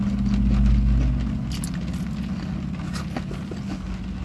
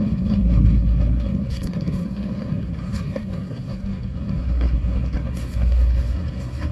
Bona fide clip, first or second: first